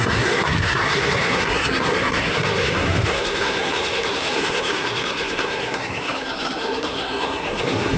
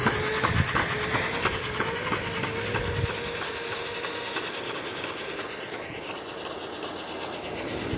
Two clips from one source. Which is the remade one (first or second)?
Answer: first